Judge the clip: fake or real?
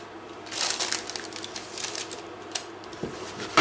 real